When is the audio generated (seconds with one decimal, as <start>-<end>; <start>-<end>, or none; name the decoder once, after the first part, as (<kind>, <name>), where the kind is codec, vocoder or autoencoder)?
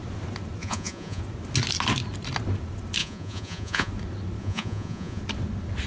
0.6-1.2 (vocoder, Vocos); 3.0-3.9; 4.4-5.2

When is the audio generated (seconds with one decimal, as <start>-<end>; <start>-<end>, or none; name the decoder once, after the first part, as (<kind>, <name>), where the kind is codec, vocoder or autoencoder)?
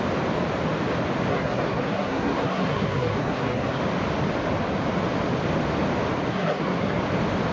1.3-3.8 (codec, SNAC); 6.3-7.0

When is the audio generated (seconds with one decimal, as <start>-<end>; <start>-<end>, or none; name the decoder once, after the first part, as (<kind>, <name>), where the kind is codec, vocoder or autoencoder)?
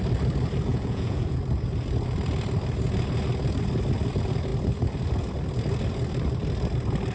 0.7-1.4 (vocoder, Vocos)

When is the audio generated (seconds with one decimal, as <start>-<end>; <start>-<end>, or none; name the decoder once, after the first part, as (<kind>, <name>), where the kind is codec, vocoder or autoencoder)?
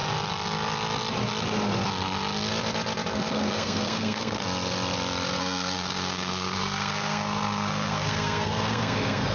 3.3-4.4 (codec, SNAC); 5.4-9.3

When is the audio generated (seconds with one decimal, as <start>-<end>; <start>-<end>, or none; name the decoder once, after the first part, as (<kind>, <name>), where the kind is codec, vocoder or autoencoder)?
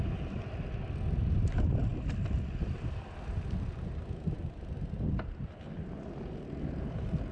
none